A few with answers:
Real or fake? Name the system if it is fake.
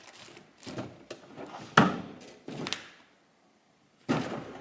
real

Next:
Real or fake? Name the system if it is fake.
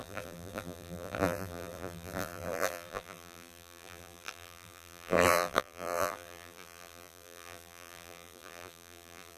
fake, vocoder, BigVGAN v2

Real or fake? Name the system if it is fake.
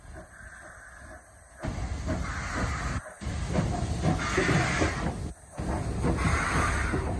real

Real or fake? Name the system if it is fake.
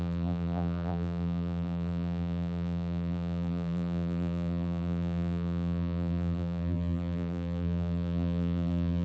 fake, vocoder, BigVGAN v2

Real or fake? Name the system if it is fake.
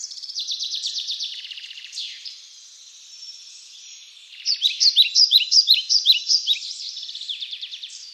fake, vocoder, BigVGAN v2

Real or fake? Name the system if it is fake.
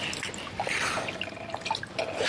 real